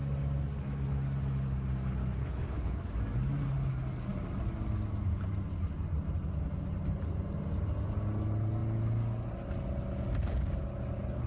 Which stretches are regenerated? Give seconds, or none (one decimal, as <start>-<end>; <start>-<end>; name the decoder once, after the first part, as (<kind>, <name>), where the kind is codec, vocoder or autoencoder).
2.2-2.9 (codec, HILCodec)